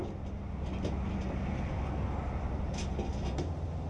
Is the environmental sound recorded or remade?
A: recorded